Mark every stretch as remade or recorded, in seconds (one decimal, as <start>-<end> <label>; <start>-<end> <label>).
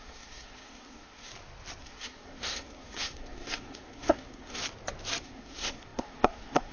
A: 0.0-1.3 remade; 1.3-1.8 recorded; 1.8-4.6 remade; 4.6-5.2 recorded; 5.2-6.7 remade